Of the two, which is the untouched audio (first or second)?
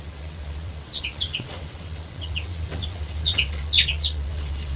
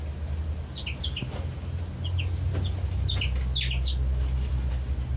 second